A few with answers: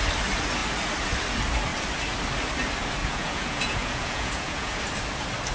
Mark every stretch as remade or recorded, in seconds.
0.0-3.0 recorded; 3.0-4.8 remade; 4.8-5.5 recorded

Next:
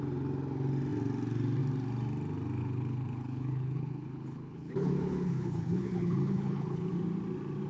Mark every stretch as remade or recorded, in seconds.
0.0-2.6 recorded; 2.6-6.9 remade; 6.9-7.7 recorded

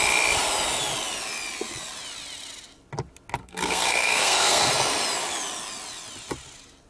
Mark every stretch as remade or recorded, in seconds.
0.0-3.4 recorded; 3.4-4.7 remade; 4.7-6.9 recorded